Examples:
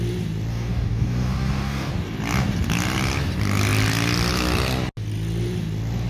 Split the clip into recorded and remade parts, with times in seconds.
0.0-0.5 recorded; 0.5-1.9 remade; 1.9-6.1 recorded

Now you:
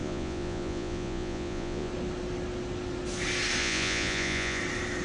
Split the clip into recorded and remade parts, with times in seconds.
0.0-1.9 remade; 1.9-3.6 recorded; 3.6-4.6 remade; 4.6-5.0 recorded